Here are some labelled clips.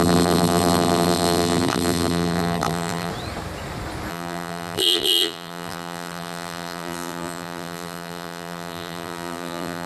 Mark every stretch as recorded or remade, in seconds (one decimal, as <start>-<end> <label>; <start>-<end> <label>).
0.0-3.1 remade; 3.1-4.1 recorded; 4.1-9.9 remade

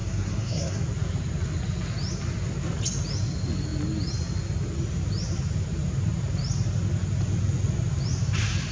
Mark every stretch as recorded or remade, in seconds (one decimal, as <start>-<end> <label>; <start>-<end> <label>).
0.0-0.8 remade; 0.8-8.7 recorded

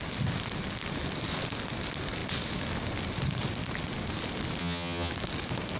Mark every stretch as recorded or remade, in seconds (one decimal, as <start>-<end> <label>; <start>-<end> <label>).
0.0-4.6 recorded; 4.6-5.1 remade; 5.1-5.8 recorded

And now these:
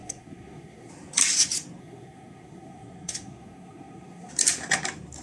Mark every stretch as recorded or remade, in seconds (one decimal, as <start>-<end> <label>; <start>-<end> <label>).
0.0-0.9 remade; 0.9-1.8 recorded; 1.8-4.3 remade; 4.3-5.2 recorded

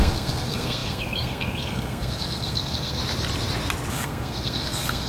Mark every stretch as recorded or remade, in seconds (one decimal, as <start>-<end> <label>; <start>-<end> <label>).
0.0-3.0 remade; 3.0-3.9 recorded; 3.9-5.1 remade

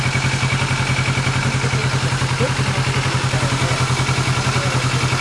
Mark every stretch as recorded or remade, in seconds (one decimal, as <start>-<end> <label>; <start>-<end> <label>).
0.0-5.2 recorded